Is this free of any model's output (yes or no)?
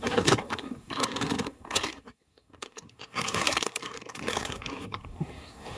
no